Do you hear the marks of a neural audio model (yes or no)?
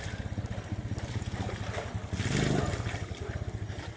no